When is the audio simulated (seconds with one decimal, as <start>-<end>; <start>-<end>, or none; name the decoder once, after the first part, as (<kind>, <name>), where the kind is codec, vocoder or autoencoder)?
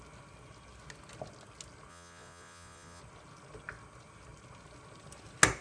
1.9-3.0 (vocoder, Vocos)